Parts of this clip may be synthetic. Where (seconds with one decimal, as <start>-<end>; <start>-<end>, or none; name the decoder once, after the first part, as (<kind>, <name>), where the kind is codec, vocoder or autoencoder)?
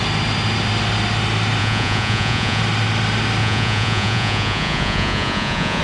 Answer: 1.6-2.6 (vocoder, Vocos); 3.4-5.8